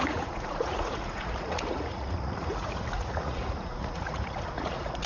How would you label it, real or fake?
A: fake